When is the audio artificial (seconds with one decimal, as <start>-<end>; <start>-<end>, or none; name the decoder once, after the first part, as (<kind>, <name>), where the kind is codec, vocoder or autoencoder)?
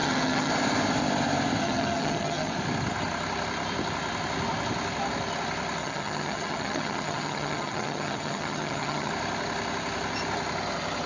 0.0-0.5 (vocoder, HiFi-GAN); 1.6-2.5; 5.8-9.1